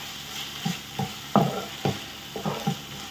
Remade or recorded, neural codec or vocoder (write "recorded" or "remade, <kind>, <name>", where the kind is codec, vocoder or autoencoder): recorded